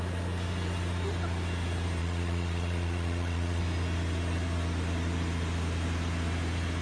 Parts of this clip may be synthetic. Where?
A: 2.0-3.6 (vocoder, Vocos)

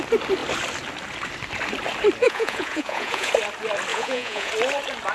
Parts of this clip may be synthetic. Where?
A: 2.2-3.3 (vocoder, Vocos); 3.9-4.5

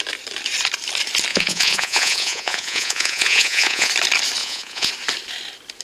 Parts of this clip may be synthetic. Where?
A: 1.3-3.9 (vocoder, Vocos); 4.4-4.9

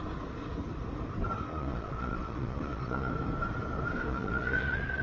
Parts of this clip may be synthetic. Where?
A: 1.5-3.1 (vocoder, Vocos); 4.1-5.0